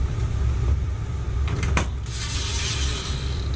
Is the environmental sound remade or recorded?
recorded